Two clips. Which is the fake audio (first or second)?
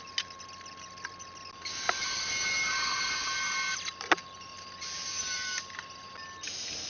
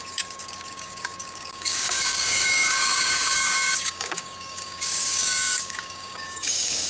second